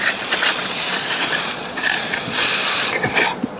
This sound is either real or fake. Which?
fake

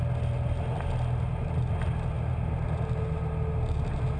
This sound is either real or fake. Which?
real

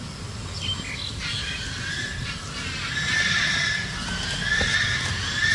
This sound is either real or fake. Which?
real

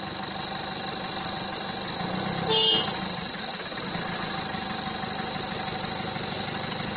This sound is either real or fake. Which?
real